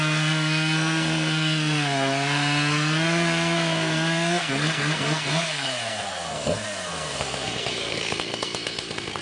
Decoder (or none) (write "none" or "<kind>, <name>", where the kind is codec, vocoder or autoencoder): codec, SNAC